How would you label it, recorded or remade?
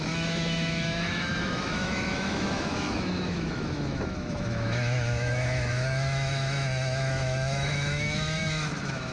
remade